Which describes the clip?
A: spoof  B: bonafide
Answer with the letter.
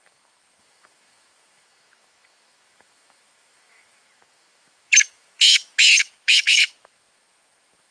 A